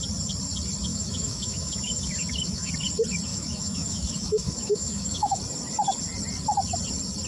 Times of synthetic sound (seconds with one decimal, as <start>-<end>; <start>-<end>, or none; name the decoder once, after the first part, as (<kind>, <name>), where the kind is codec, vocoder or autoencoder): 0.9-2.7 (autoencoder, DAC-VAE); 3.3-5.4